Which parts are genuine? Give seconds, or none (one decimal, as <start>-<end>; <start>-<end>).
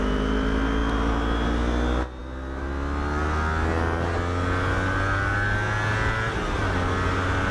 0.0-7.5